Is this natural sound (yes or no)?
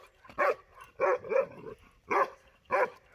yes